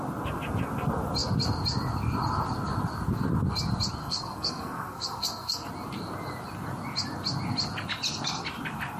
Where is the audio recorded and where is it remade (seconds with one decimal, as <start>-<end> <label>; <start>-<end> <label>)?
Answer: 0.0-4.0 recorded; 4.0-5.7 remade; 5.7-9.0 recorded